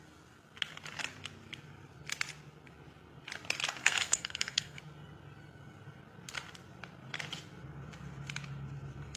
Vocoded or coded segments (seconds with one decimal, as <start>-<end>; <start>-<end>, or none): 3.8-4.8